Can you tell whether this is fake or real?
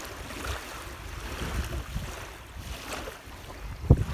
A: real